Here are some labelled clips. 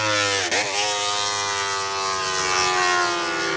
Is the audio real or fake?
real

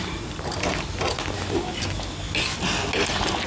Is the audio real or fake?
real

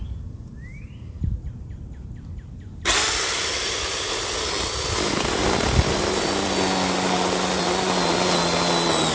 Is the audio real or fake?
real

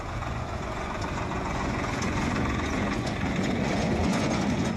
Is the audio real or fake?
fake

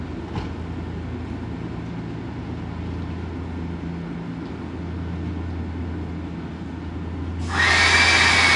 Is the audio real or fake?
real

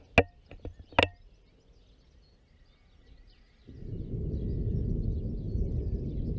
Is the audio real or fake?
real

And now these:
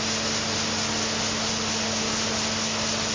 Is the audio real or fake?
real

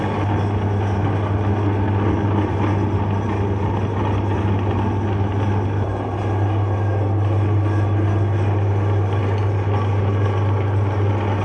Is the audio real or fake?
real